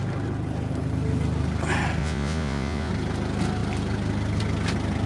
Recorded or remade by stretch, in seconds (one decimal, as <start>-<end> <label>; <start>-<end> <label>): 0.0-2.0 recorded; 2.0-2.9 remade; 2.9-5.1 recorded